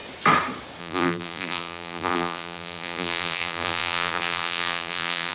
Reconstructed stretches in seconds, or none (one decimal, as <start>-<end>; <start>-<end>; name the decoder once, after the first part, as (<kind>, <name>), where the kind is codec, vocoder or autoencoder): 0.8-5.3 (vocoder, BigVGAN v2)